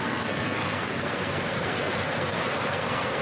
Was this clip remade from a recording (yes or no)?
yes